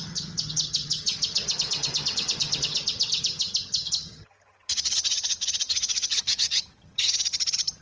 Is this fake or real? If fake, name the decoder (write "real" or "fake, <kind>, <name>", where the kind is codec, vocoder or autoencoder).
fake, vocoder, HiFi-GAN